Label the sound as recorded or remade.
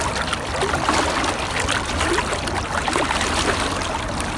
recorded